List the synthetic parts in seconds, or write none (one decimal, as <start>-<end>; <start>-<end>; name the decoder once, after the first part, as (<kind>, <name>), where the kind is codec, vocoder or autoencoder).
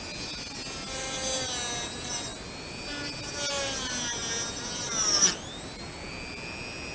none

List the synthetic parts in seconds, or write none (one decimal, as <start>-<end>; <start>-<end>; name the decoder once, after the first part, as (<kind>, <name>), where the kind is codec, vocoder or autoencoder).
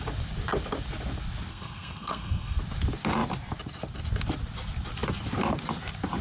1.5-2.6 (codec, SNAC)